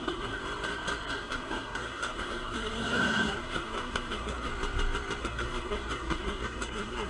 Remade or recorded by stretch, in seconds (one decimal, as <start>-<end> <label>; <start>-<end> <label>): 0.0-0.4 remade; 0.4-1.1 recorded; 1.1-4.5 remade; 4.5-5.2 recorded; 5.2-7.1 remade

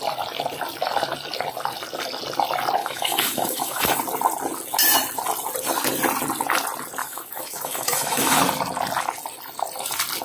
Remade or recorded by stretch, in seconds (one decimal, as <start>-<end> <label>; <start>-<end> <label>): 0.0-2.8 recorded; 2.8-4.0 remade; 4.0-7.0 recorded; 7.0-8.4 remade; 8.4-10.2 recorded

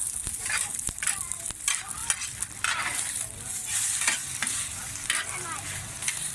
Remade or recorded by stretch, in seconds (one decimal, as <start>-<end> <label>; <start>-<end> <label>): 0.0-6.3 recorded

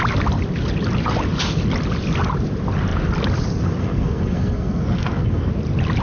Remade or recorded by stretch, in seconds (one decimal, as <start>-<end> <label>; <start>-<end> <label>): 0.0-3.8 recorded; 3.8-5.5 remade; 5.5-6.0 recorded

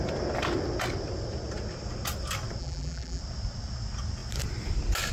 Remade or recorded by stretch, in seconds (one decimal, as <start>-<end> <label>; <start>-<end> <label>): 0.0-2.6 recorded; 2.6-3.2 remade; 3.2-5.1 recorded

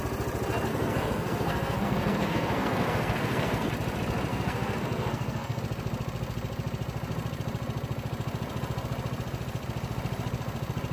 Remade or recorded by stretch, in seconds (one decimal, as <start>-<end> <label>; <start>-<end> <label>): 0.0-0.7 recorded; 0.7-3.7 remade; 3.7-4.3 recorded; 4.3-5.6 remade; 5.6-10.9 recorded

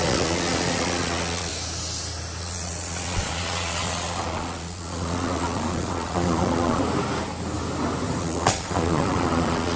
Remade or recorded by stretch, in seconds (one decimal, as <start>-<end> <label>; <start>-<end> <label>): 0.0-1.5 remade; 1.5-2.4 recorded; 2.4-6.8 remade; 6.8-8.2 recorded; 8.2-9.8 remade

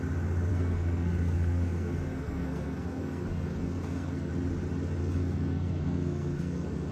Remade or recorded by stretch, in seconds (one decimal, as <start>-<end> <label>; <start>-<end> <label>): 0.0-0.5 recorded; 0.5-4.3 remade; 4.3-5.0 recorded; 5.0-6.9 remade